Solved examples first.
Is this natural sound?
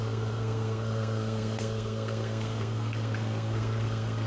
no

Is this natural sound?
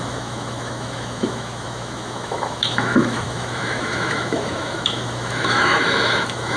no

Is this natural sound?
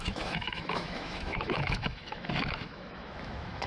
no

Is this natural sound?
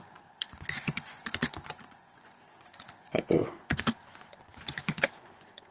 no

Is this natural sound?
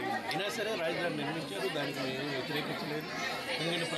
yes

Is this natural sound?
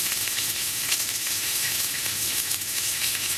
no